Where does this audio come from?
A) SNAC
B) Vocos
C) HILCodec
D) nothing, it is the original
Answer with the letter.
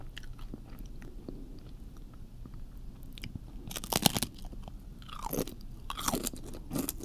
D